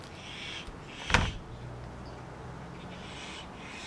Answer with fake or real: real